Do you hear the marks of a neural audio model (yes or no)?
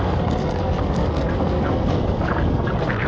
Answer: yes